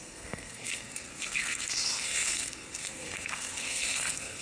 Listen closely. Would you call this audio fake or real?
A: fake